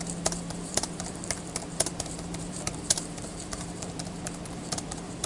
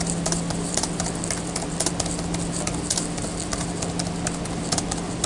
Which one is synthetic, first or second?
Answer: first